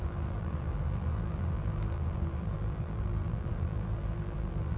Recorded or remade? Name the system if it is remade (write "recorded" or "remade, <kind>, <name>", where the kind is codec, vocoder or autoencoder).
remade, vocoder, BigVGAN v2